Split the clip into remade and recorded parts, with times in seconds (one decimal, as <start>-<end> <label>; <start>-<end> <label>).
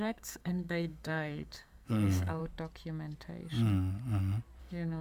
0.0-2.4 remade; 2.4-4.6 recorded; 4.6-5.0 remade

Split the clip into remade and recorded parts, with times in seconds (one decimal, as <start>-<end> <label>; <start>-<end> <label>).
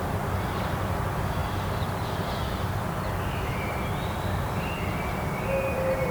0.0-6.1 recorded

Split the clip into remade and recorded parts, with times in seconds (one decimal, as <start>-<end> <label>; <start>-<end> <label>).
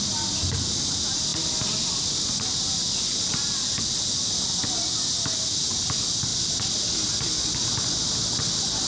0.0-8.9 recorded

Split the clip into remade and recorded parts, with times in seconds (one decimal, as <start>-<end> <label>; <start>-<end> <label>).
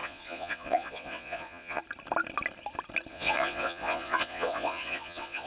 0.0-1.8 remade; 1.8-3.1 recorded; 3.1-5.5 remade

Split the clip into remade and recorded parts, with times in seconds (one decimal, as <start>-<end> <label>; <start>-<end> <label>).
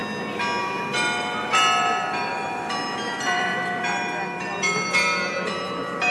0.0-0.6 recorded; 0.6-6.1 remade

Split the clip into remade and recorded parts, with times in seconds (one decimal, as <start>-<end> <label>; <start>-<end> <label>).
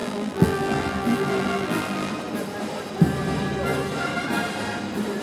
0.0-2.1 remade; 2.1-5.2 recorded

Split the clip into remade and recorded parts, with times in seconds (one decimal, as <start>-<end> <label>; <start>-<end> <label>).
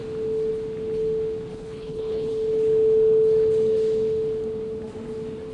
0.0-1.5 recorded; 1.5-2.3 remade; 2.3-5.5 recorded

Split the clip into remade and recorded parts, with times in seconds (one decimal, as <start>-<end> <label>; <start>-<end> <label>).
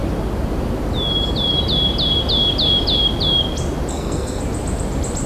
0.0-3.9 recorded; 3.9-4.4 remade; 4.4-5.3 recorded